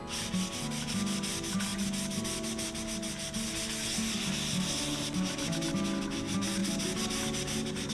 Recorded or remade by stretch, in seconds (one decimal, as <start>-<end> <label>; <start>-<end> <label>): 0.0-7.9 recorded